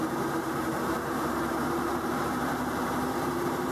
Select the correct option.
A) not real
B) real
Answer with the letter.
A